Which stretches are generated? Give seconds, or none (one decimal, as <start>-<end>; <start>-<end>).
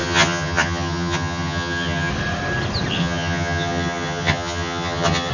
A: 0.0-2.1; 3.0-5.3